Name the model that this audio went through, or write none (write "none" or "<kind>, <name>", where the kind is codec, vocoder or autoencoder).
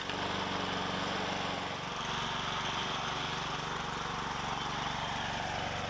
none